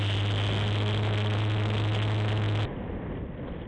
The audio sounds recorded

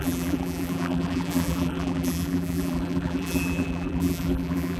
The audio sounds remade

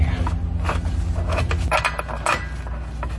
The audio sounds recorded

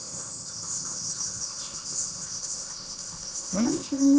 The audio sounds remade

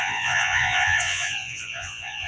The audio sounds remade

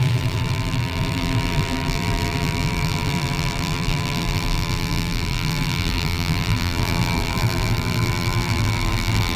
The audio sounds remade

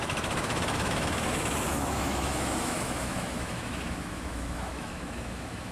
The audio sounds remade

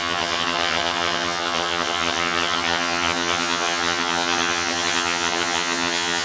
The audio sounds remade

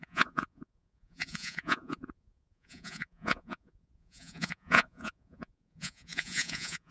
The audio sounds remade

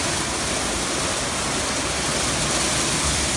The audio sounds recorded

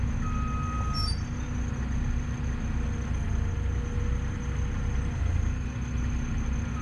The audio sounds recorded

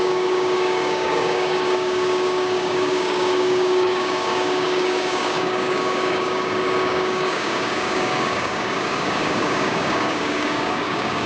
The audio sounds remade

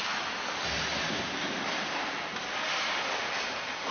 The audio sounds recorded